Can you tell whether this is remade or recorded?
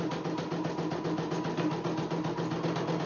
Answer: recorded